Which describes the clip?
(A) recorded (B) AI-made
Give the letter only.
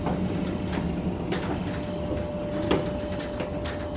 A